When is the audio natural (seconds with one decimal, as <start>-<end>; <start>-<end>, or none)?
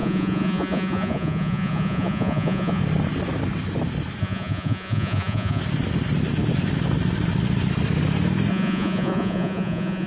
2.8-4.2; 5.6-8.5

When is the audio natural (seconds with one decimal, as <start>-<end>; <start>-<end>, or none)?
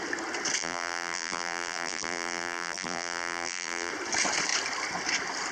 0.0-0.6; 3.9-5.5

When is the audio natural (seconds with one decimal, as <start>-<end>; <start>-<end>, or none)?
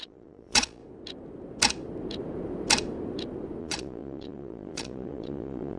0.8-3.6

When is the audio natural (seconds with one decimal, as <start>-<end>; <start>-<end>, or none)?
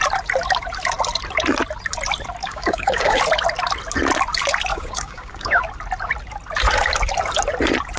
0.0-2.4; 3.2-4.7; 5.6-8.0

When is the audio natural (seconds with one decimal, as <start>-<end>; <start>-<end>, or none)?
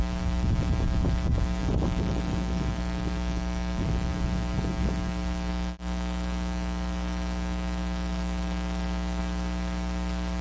0.0-1.6; 4.1-5.5; 9.2-10.4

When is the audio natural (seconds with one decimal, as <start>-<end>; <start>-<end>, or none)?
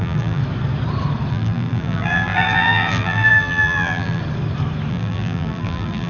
0.4-1.3; 4.2-4.9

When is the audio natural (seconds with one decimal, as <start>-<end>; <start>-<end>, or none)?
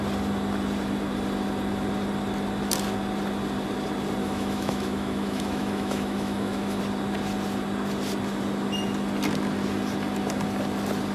0.0-4.2; 6.8-11.1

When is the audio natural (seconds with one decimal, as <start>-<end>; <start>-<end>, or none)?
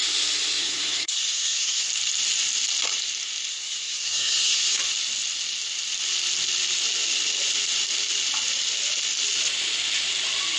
0.0-0.6; 1.9-3.5; 4.8-10.6